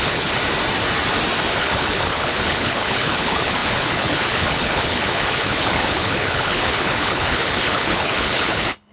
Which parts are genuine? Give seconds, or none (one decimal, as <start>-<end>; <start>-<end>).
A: 0.4-1.6